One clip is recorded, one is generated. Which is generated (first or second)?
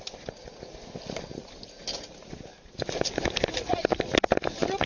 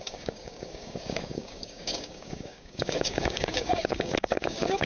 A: second